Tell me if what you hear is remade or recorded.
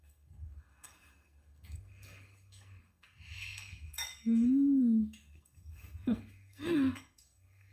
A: remade